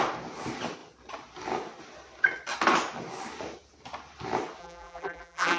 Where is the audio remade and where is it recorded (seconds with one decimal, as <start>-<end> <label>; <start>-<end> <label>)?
0.0-4.6 recorded; 4.6-5.6 remade